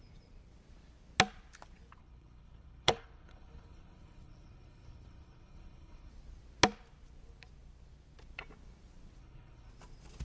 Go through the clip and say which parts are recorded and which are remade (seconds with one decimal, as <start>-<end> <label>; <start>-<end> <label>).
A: 0.0-2.0 recorded; 2.0-6.1 remade; 6.1-9.2 recorded; 9.2-9.7 remade; 9.7-10.2 recorded